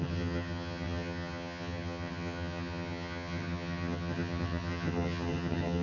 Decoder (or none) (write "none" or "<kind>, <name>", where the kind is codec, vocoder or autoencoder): vocoder, HiFi-GAN